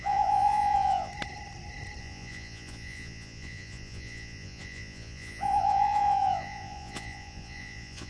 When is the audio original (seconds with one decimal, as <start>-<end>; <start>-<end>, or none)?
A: 1.1-2.0